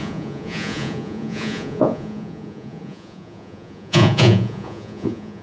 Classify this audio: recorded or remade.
remade